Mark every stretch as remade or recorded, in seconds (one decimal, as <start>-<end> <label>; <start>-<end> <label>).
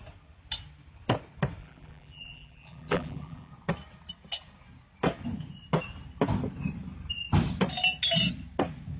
0.0-1.6 recorded; 1.6-3.5 remade; 3.5-9.0 recorded